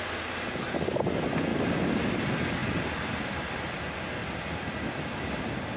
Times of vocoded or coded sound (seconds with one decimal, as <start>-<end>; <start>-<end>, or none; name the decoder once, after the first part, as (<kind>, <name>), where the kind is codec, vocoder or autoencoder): none